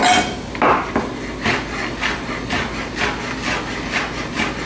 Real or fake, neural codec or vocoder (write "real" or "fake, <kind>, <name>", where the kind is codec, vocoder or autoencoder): real